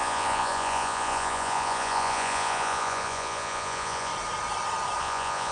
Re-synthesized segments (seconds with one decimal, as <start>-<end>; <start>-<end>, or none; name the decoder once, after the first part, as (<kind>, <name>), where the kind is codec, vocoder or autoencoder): 0.0-4.1 (vocoder, Vocos); 5.0-5.5